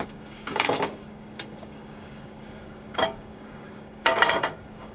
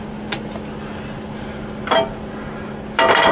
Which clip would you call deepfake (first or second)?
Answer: first